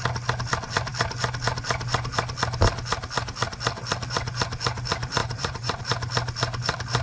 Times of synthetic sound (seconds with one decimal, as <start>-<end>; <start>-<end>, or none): 5.2-5.8